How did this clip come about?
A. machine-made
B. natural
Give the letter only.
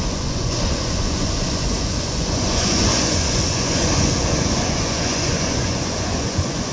A